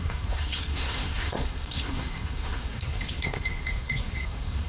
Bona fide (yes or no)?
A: no